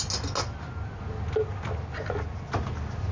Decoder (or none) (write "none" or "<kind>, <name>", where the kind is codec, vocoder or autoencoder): none